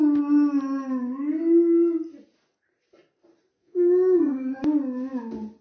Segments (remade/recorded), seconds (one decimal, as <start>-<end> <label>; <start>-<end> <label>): 0.0-3.6 recorded; 3.6-4.6 remade; 4.6-5.6 recorded